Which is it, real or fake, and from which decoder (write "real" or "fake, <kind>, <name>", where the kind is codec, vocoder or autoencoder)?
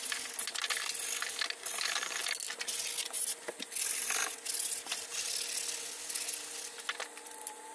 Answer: real